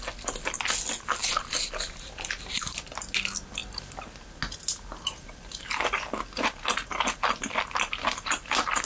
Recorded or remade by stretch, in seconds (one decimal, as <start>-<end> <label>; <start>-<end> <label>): 0.0-8.9 recorded